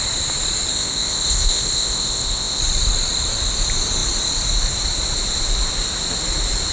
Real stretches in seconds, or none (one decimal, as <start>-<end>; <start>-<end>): 0.0-0.7; 2.6-6.7